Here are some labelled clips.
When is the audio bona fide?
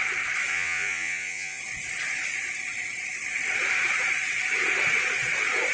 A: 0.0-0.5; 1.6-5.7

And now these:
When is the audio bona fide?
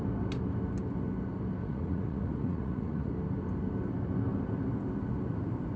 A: 0.0-1.6; 3.1-5.8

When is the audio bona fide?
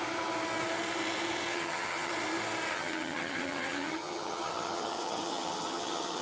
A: 0.0-1.5; 2.1-2.7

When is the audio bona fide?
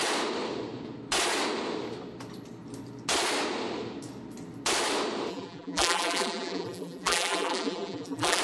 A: 0.0-5.3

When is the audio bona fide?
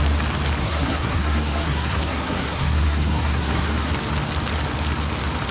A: 0.0-0.6; 3.9-5.5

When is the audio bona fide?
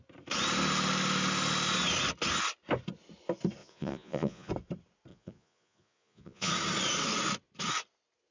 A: 0.0-3.6; 4.5-5.1; 6.5-8.3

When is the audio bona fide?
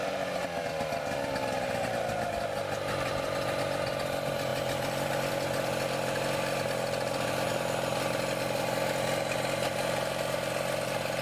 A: 0.0-11.2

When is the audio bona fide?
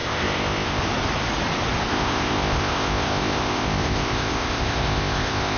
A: 0.8-1.9